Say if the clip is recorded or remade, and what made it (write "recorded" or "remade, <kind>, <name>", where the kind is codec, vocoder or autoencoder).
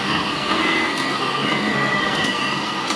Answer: remade, codec, SNAC